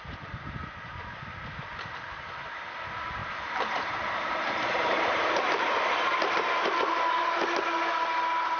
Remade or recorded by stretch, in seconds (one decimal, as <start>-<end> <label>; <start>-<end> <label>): 0.0-3.2 recorded; 3.2-7.0 remade; 7.0-8.6 recorded